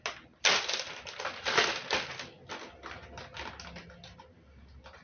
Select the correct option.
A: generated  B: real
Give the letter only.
B